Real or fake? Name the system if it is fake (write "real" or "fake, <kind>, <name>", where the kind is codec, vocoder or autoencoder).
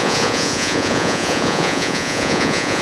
fake, vocoder, Vocos